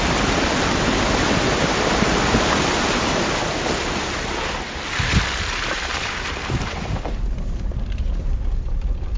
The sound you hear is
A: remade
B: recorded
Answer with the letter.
A